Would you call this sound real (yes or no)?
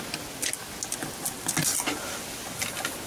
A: yes